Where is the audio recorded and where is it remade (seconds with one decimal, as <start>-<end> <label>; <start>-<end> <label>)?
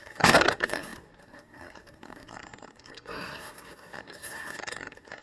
0.0-5.2 remade